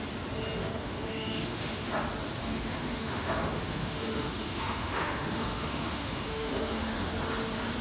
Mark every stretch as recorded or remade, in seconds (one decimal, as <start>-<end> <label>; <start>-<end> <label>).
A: 0.0-0.6 recorded; 0.6-1.9 remade; 1.9-2.4 recorded; 2.4-7.1 remade; 7.1-7.8 recorded